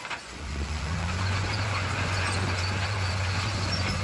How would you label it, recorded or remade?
remade